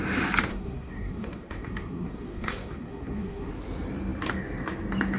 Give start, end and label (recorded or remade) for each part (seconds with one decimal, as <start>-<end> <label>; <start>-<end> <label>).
0.0-0.5 recorded; 0.5-3.5 remade; 3.5-5.2 recorded